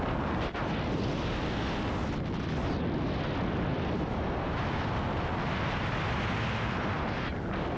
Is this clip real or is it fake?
real